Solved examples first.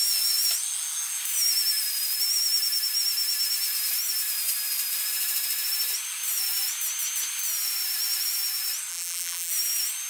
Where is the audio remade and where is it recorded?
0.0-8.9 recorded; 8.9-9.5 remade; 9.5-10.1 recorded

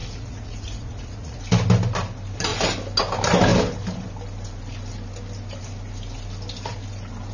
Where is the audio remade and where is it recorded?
0.0-1.4 remade; 1.4-7.3 recorded

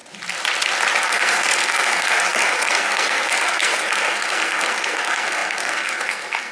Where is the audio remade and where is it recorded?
0.0-1.0 recorded; 1.0-6.5 remade

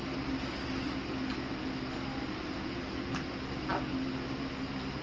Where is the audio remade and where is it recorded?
0.0-5.0 recorded